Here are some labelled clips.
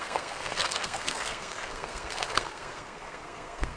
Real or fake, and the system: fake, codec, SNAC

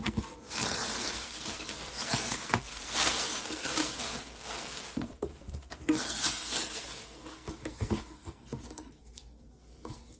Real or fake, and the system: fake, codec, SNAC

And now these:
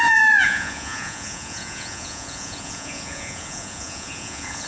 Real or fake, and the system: fake, vocoder, Vocos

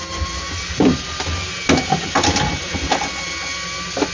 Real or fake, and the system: real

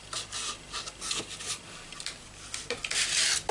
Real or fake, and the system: real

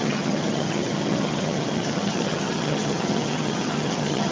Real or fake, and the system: fake, vocoder, HiFi-GAN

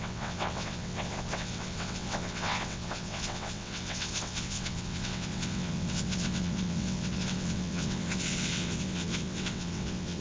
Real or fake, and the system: fake, vocoder, WaveNeXt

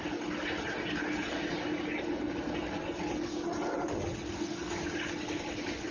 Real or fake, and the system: real